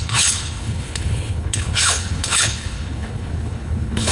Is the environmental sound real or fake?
fake